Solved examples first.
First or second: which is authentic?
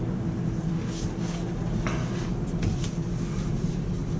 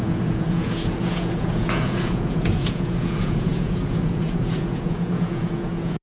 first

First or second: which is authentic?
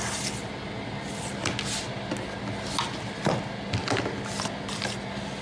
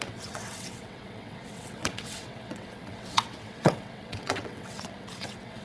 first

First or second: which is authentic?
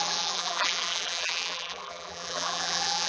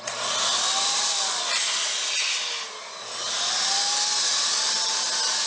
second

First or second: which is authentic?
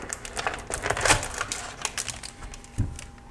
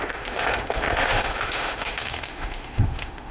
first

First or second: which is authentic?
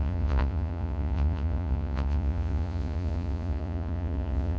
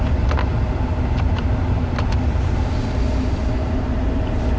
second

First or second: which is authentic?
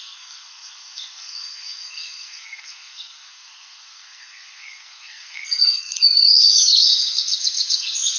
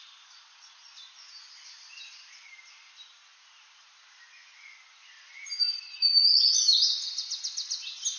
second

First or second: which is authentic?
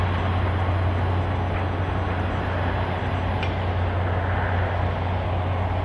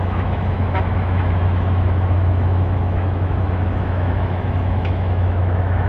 first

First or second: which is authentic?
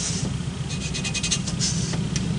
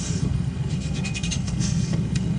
first